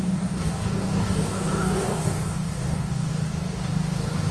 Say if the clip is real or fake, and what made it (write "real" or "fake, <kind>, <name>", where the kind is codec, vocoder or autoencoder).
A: fake, codec, DAC